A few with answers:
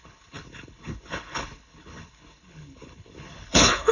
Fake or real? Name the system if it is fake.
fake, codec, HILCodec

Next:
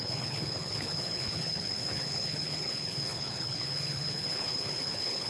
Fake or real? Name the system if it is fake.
fake, codec, HILCodec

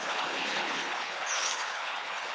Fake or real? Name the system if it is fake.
fake, codec, HILCodec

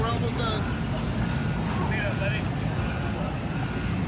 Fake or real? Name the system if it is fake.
real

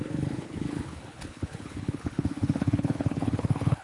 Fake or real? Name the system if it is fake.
fake, codec, HILCodec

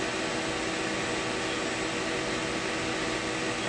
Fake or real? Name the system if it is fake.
real